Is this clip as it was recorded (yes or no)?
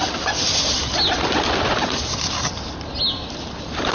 yes